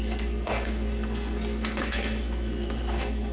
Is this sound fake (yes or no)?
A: yes